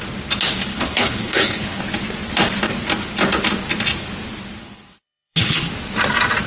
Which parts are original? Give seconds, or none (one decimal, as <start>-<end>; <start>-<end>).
0.0-0.7; 1.8-4.6; 5.7-6.5